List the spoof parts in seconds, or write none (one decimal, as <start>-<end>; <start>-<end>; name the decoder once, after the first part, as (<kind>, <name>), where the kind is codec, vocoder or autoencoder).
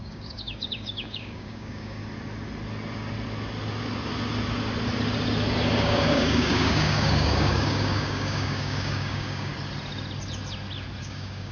0.0-2.0 (codec, DAC); 5.8-9.5; 11.0-11.5